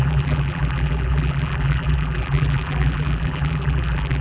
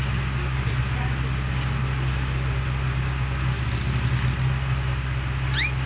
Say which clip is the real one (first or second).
second